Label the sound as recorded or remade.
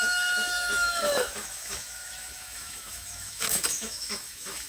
remade